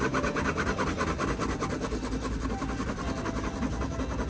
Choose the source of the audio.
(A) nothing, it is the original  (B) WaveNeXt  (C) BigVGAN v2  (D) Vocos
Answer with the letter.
A